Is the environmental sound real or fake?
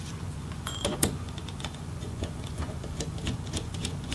fake